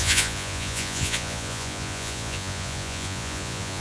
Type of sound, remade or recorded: remade